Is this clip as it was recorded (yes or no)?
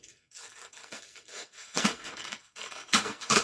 no